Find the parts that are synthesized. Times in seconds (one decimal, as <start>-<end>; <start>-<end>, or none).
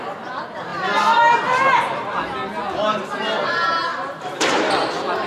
0.7-1.7